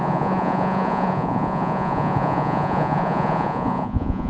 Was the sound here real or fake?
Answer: fake